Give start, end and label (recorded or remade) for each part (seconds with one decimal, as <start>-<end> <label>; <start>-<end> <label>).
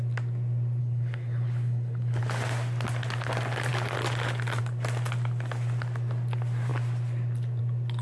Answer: 0.0-0.8 recorded; 0.8-2.2 remade; 2.2-8.0 recorded